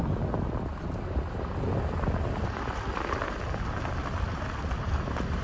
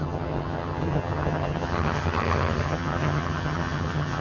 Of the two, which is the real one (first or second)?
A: first